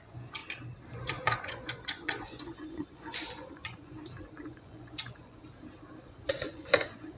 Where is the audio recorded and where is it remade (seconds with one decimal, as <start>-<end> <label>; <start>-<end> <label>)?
0.0-0.4 remade; 0.4-0.9 recorded; 0.9-3.9 remade; 3.9-4.4 recorded; 4.4-5.4 remade; 5.4-6.0 recorded; 6.0-7.2 remade